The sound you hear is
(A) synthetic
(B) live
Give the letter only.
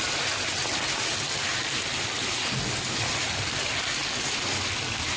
B